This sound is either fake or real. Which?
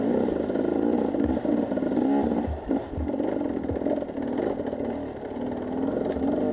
real